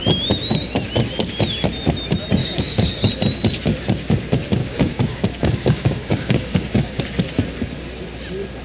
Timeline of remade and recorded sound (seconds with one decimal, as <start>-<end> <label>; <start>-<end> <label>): 0.0-2.4 recorded; 2.4-3.1 remade; 3.1-4.6 recorded; 4.6-7.0 remade; 7.0-8.6 recorded